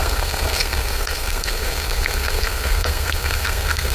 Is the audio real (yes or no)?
no